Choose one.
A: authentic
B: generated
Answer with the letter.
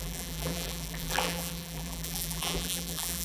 B